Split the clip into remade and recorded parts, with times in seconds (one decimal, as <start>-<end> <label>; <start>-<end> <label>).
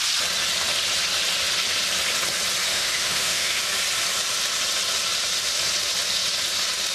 0.0-2.7 recorded; 2.7-3.6 remade; 3.6-6.9 recorded